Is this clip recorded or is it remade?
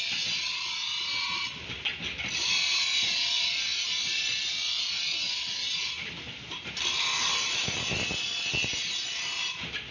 recorded